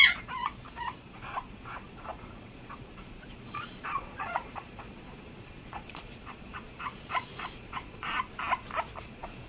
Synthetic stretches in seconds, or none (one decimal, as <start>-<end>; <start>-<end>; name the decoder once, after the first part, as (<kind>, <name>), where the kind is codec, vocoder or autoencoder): 0.0-8.1 (vocoder, Vocos); 9.0-9.5